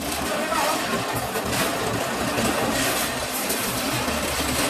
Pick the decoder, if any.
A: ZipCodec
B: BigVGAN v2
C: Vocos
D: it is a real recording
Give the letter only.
D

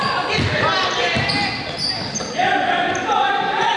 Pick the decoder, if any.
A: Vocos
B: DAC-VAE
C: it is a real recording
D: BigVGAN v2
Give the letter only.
C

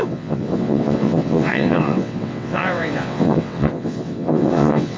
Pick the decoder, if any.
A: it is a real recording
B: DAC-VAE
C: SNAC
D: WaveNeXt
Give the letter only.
D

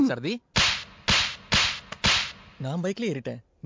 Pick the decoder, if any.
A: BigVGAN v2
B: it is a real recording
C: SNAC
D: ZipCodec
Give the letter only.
B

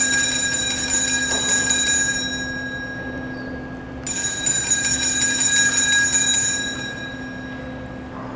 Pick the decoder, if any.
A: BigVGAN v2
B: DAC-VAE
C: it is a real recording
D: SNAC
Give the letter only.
C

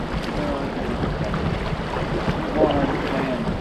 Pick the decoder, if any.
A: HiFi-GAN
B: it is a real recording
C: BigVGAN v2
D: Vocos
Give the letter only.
B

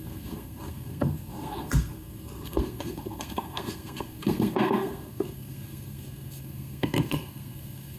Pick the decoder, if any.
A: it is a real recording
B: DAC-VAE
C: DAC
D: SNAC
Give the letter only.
D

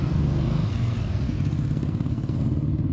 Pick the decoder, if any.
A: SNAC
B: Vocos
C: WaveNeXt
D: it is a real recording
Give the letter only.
A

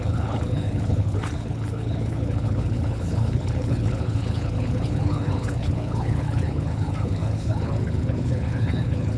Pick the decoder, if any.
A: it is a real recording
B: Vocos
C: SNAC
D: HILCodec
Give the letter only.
D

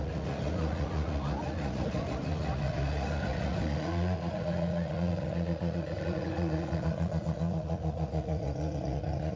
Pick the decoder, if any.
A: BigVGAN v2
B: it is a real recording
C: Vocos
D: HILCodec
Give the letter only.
C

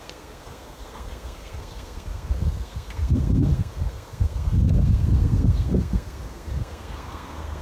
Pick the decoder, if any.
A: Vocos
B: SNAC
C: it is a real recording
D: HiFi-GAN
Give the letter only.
B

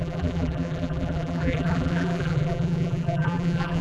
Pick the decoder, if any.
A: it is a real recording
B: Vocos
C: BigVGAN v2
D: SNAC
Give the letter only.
C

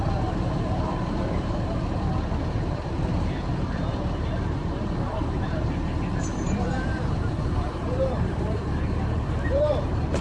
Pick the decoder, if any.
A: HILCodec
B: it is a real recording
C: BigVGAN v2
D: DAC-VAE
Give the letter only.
C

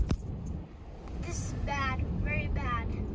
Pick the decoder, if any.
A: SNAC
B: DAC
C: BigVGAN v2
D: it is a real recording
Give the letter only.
D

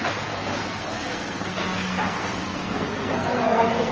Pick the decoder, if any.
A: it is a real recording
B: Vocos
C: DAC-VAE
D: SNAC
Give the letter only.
D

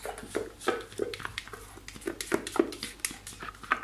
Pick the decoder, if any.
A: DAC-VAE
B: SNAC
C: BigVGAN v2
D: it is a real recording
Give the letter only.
D